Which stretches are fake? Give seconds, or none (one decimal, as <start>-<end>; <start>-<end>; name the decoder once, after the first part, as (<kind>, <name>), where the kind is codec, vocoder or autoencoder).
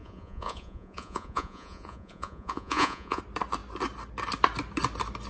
0.0-3.2 (vocoder, Vocos)